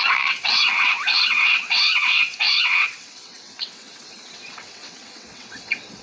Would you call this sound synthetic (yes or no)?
yes